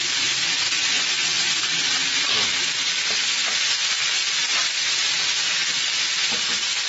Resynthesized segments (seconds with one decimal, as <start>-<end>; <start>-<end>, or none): none